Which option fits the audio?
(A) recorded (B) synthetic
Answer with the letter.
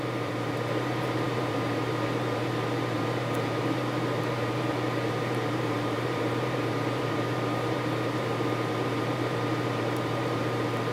B